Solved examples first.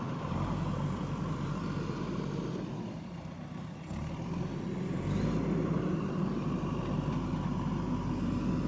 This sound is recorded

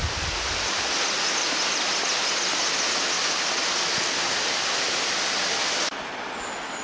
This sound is recorded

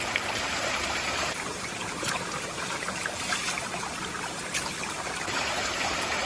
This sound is remade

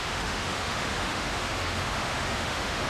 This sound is remade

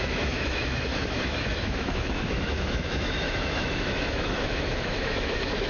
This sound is remade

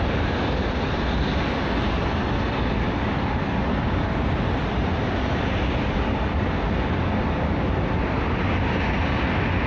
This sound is recorded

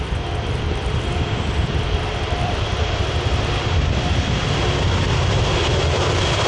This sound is remade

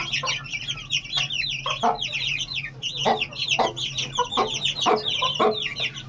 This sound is recorded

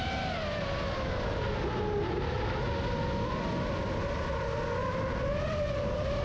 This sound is recorded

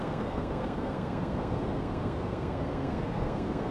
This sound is remade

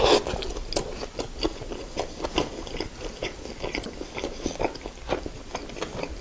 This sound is recorded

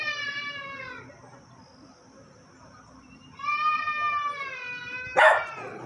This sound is recorded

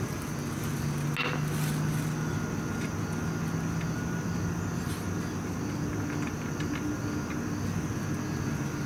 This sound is recorded